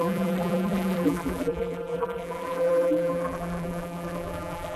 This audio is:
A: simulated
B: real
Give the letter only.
A